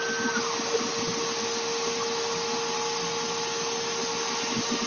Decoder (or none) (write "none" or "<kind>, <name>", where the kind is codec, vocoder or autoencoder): none